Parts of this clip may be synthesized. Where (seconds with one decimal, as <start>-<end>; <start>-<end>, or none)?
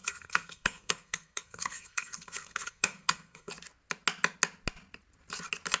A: 0.0-3.5